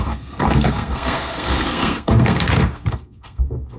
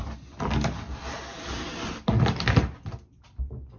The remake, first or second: first